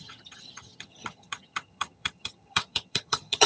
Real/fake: fake